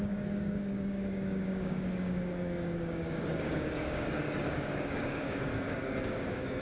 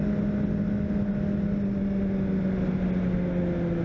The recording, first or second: second